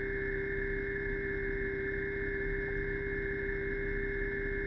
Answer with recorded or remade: recorded